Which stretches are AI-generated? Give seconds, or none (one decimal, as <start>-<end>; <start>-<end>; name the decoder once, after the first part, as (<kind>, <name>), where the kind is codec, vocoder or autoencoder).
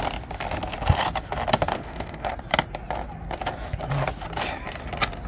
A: 1.7-2.3 (autoencoder, DAC-VAE)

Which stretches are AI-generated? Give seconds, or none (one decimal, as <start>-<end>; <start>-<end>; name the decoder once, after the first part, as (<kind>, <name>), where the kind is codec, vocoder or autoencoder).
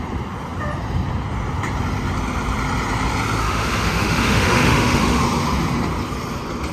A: 3.4-5.2 (autoencoder, DAC-VAE)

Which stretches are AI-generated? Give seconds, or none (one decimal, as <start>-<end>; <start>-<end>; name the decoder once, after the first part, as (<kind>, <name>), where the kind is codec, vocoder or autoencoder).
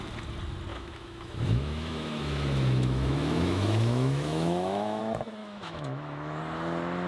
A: 0.7-5.0 (autoencoder, DAC-VAE); 5.4-6.4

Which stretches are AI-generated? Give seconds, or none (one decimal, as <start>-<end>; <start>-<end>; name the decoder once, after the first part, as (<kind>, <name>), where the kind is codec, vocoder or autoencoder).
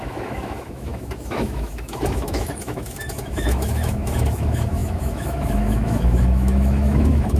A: 0.0-7.4 (autoencoder, DAC-VAE)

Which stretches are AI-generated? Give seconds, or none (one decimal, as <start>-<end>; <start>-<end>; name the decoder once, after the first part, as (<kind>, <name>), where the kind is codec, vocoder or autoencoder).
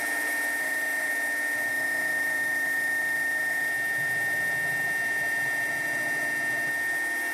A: 0.6-1.1 (autoencoder, DAC-VAE); 1.7-3.7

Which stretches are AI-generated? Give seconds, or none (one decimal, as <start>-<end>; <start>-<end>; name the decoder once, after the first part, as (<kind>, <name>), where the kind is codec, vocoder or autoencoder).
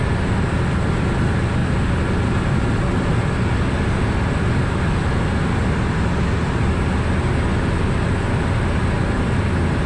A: none